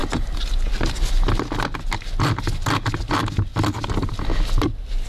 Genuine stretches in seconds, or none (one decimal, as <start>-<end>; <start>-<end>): 0.0-5.1